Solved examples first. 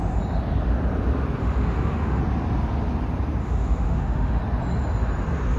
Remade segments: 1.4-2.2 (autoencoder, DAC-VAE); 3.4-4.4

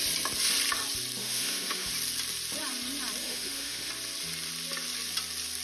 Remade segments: 1.2-1.9 (autoencoder, DAC-VAE); 3.2-3.9

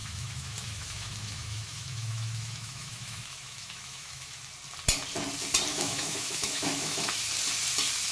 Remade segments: 0.0-4.4 (autoencoder, DAC-VAE); 5.7-7.1

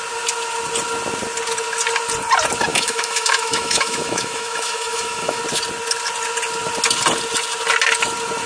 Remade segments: 2.7-5.4 (autoencoder, DAC-VAE)

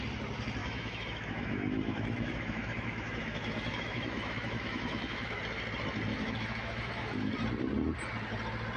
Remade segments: 0.6-5.4 (autoencoder, DAC-VAE); 6.1-7.3